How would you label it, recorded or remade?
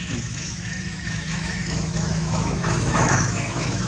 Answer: remade